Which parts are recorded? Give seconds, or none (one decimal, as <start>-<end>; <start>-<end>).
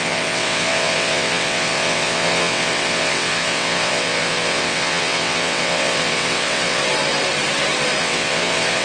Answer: 6.8-8.0